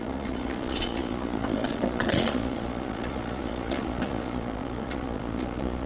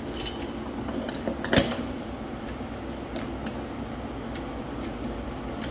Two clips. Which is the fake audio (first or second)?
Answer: first